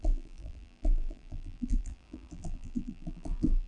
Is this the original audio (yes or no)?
no